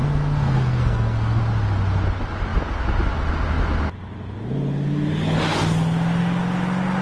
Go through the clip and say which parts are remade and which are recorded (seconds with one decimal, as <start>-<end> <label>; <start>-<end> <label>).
0.0-1.4 remade; 1.4-7.0 recorded